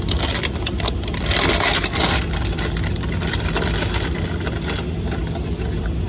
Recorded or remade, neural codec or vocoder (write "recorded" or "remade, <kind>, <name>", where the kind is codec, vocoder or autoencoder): recorded